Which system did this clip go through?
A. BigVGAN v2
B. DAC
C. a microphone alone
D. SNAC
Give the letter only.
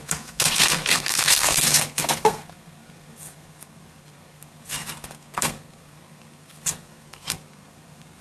D